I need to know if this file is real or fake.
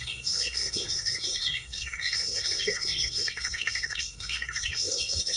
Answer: fake